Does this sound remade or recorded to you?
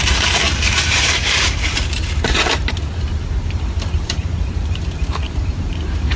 remade